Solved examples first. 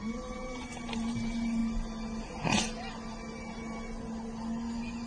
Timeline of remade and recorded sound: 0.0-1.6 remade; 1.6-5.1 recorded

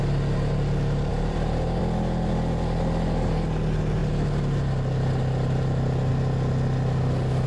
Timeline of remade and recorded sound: 0.0-1.1 recorded; 1.1-1.8 remade; 1.8-7.5 recorded

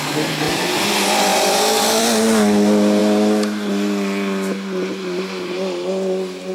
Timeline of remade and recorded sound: 0.0-1.3 recorded; 1.3-2.0 remade; 2.0-6.5 recorded